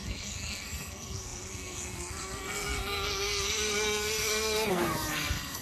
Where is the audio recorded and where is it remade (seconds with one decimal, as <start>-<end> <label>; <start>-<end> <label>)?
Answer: 0.0-5.6 remade